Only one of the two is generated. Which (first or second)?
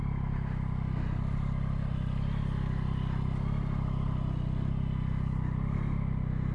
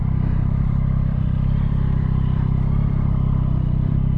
second